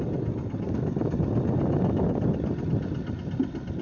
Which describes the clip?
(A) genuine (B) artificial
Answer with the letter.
A